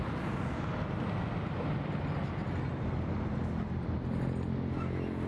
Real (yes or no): yes